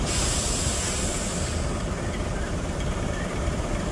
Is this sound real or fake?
fake